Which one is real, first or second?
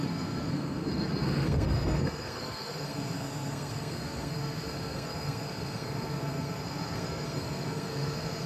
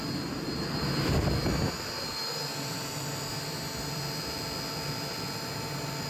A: second